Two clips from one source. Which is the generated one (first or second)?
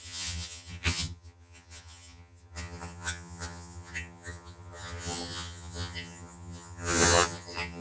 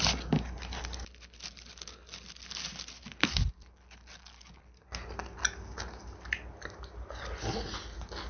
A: first